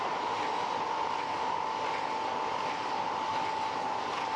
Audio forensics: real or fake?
real